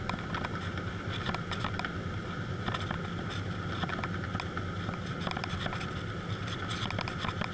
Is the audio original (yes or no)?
yes